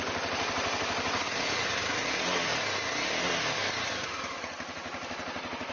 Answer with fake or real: real